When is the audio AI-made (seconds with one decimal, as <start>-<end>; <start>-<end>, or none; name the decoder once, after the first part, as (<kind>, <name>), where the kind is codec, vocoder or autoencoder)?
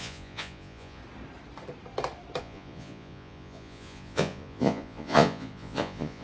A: 0.0-1.0 (vocoder, Vocos); 2.4-6.2